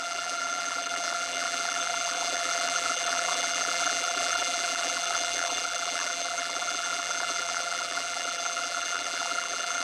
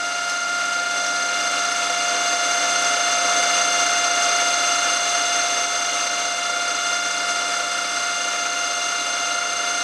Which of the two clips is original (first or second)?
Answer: second